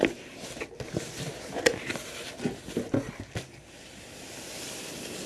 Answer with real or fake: real